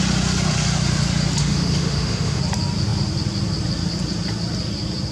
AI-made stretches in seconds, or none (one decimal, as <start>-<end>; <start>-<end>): 1.4-2.4